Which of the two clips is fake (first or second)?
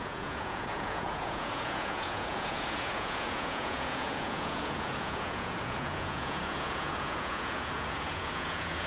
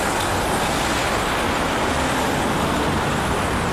first